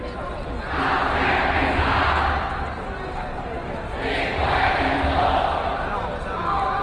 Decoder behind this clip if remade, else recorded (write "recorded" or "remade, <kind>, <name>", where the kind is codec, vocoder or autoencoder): recorded